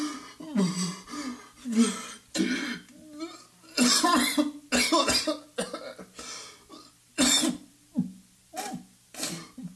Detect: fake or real real